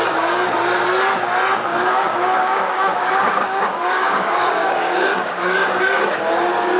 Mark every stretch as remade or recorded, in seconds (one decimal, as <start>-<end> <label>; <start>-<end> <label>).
0.0-1.7 recorded; 1.7-5.8 remade; 5.8-6.8 recorded

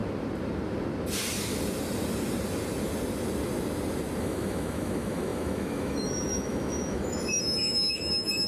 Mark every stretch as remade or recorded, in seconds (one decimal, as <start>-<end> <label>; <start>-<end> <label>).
0.0-4.2 recorded; 4.2-8.5 remade

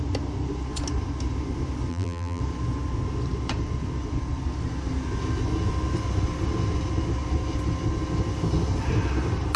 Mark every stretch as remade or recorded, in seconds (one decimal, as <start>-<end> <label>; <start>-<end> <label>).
0.0-1.9 recorded; 1.9-2.4 remade; 2.4-9.6 recorded

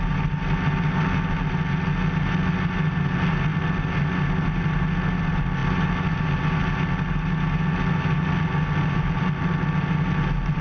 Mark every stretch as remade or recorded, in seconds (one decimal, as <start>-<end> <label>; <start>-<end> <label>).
0.0-10.6 recorded